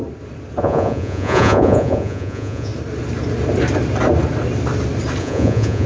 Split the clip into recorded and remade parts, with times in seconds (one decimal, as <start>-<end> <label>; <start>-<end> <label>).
0.0-0.6 recorded; 0.6-2.7 remade; 2.7-5.2 recorded; 5.2-5.9 remade